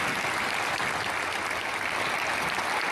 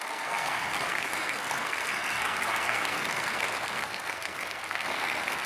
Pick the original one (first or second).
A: first